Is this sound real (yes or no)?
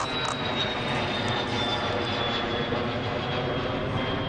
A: yes